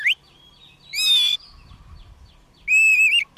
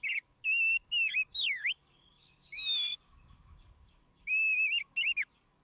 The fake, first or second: second